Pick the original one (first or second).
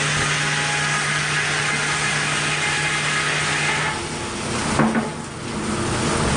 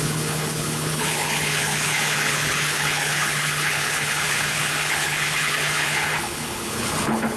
first